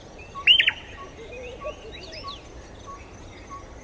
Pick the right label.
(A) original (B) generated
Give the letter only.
A